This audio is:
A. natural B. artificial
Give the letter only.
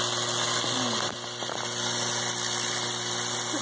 A